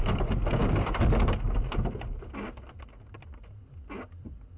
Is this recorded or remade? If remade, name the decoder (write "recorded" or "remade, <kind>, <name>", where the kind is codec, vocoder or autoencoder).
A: recorded